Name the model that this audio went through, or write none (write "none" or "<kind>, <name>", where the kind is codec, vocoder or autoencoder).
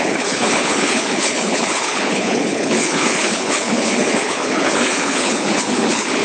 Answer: codec, HILCodec